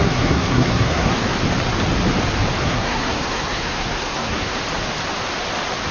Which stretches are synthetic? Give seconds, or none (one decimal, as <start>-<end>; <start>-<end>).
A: 0.0-1.2; 2.6-4.6